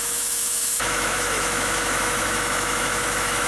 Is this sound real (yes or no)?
no